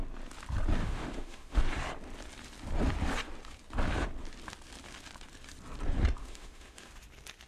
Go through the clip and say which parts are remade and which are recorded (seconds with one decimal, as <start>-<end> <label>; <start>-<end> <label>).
0.0-0.8 recorded; 0.8-1.6 remade; 1.6-6.2 recorded; 6.2-6.9 remade; 6.9-7.5 recorded